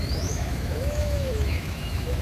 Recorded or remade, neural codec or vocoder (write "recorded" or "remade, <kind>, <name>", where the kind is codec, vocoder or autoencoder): remade, autoencoder, DAC-VAE